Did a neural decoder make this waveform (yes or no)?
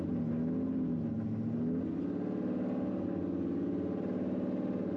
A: no